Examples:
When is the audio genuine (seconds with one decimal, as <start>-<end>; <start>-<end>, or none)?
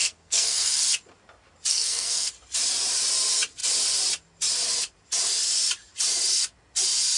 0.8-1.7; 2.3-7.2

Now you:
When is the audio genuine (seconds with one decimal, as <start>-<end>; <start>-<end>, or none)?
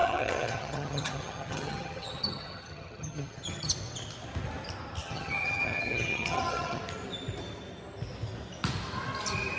3.7-5.0; 6.8-9.6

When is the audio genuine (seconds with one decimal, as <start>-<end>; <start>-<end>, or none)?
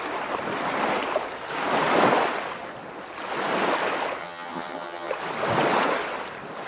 0.0-4.2; 5.1-6.7